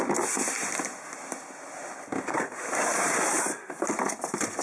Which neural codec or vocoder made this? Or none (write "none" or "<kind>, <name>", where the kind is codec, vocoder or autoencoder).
none